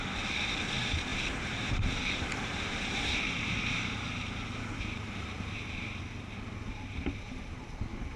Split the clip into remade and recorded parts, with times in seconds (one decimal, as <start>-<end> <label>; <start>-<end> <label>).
0.0-1.1 recorded; 1.1-6.0 remade; 6.0-8.2 recorded